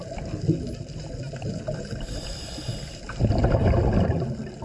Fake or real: real